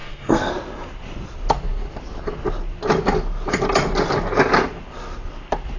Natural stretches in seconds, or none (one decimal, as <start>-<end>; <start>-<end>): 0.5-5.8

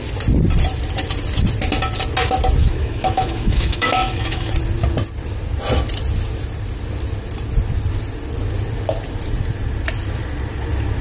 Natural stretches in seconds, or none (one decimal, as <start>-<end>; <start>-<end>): 0.0-2.6; 4.5-11.0

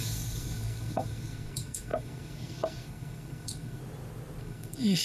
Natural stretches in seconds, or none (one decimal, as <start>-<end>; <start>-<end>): 3.8-4.4